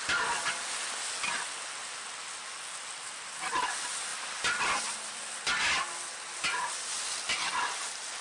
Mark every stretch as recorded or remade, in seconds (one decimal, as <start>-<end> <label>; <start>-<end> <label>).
0.0-8.2 recorded